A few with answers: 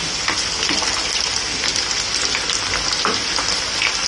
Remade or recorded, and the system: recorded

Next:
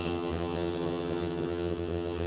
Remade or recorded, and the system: remade, vocoder, HiFi-GAN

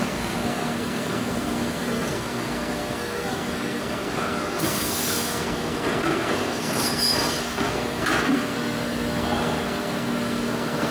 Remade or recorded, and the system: remade, codec, SNAC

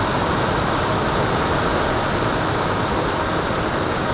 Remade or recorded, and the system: recorded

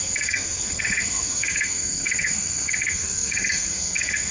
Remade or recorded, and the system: remade, codec, SNAC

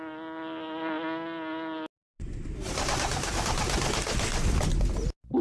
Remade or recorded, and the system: recorded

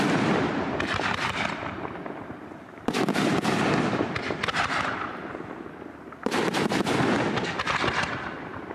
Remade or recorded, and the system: remade, vocoder, BigVGAN v2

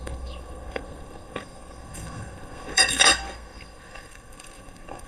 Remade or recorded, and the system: remade, codec, SNAC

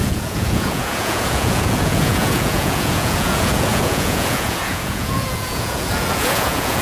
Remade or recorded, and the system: remade, vocoder, Vocos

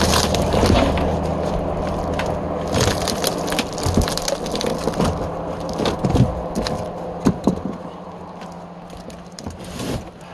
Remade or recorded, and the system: recorded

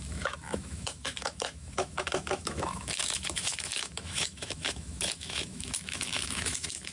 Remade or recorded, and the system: remade, autoencoder, DAC-VAE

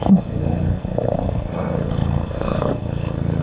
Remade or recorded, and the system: remade, codec, SNAC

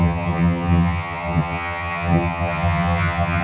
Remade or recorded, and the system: remade, vocoder, HiFi-GAN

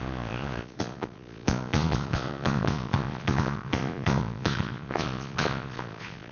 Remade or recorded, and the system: remade, vocoder, Vocos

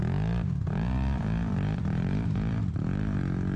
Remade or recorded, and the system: remade, vocoder, BigVGAN v2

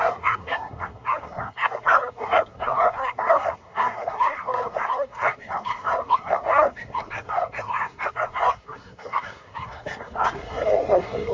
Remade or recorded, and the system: remade, codec, SNAC